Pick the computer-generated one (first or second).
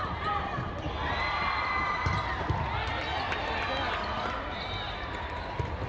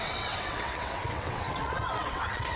second